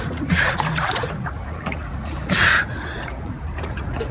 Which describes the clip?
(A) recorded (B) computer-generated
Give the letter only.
B